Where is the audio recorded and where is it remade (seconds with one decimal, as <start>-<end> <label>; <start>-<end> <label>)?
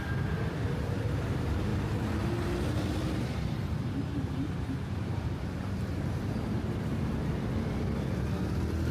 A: 0.0-4.1 recorded; 4.1-7.4 remade; 7.4-8.9 recorded